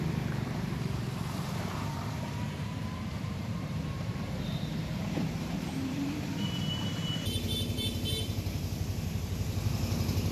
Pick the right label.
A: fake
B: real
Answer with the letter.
A